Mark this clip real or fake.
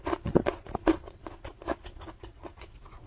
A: fake